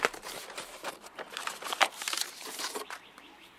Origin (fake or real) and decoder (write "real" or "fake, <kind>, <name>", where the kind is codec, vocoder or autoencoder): fake, vocoder, BigVGAN v2